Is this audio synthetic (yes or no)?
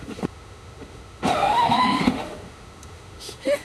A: yes